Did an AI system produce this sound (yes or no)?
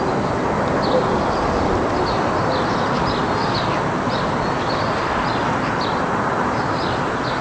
no